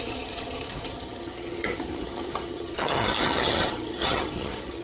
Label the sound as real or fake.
fake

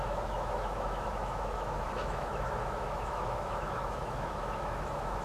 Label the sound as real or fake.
fake